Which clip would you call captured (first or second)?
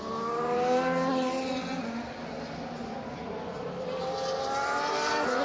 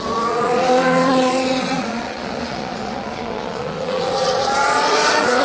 first